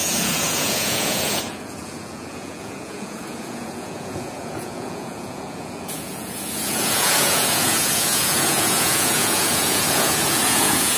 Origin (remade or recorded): remade